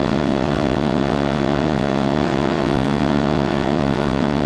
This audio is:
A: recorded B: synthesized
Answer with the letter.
B